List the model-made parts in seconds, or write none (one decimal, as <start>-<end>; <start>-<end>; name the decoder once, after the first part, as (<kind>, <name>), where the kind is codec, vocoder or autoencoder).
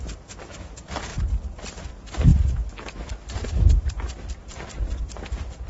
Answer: 1.1-1.9 (vocoder, BigVGAN v2)